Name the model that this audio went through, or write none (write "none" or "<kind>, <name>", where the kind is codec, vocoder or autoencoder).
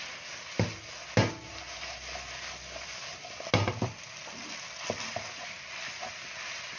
none